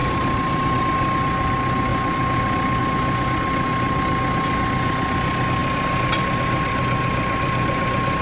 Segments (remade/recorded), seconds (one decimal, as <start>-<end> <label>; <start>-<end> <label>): 0.0-0.8 remade; 0.8-8.2 recorded